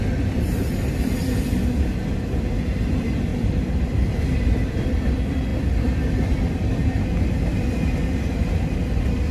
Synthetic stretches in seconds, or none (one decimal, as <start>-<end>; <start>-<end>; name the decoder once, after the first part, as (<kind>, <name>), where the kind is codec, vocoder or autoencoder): 3.3-5.1 (vocoder, BigVGAN v2); 8.0-8.7